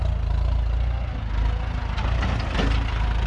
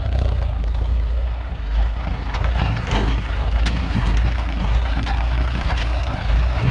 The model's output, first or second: second